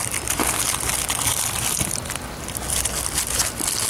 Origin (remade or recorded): recorded